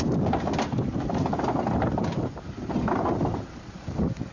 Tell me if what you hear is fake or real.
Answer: real